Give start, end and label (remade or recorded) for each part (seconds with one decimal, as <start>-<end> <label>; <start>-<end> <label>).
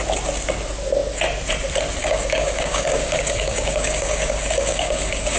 0.0-2.0 recorded; 2.0-5.4 remade